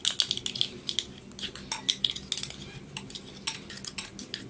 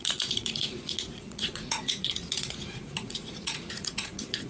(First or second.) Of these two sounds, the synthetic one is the second